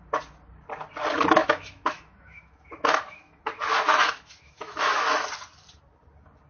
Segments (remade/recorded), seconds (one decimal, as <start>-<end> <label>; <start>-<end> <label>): 0.0-1.4 recorded; 1.4-5.3 remade; 5.3-6.5 recorded